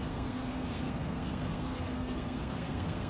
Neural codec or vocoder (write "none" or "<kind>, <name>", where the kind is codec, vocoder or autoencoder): codec, SNAC